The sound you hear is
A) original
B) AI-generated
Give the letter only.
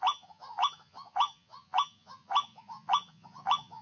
B